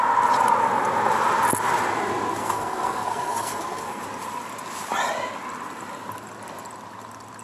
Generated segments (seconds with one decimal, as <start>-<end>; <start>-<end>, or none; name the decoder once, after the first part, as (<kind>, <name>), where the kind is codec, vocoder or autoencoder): 2.4-4.0 (codec, SNAC)

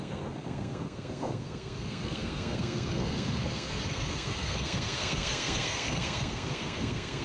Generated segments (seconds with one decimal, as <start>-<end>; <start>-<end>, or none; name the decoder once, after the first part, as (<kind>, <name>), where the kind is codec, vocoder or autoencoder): 0.0-7.2 (codec, SNAC)

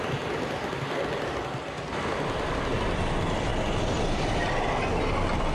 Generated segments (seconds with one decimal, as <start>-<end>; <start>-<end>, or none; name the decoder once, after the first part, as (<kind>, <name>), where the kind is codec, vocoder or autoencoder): none

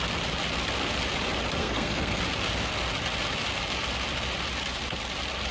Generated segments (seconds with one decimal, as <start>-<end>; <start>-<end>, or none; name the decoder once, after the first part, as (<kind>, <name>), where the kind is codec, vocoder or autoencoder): 1.6-2.2 (codec, SNAC)

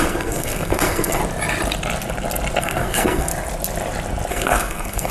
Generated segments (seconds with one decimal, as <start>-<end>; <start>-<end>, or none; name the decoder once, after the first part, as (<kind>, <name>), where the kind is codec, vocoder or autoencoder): 0.0-1.2 (codec, SNAC); 2.6-3.3; 4.3-5.1

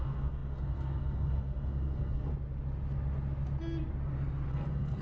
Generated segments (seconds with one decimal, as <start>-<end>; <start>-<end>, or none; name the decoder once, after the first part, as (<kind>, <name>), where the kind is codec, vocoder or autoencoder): 0.0-2.3 (codec, SNAC); 4.5-5.0

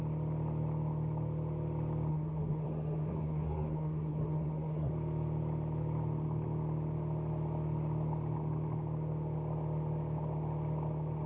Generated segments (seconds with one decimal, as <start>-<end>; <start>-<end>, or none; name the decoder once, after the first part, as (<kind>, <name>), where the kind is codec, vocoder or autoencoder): 2.1-4.9 (codec, SNAC)

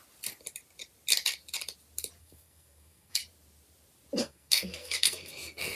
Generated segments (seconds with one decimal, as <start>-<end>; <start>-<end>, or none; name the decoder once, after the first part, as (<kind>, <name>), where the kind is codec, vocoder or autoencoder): 2.2-3.2 (codec, SNAC); 4.2-5.8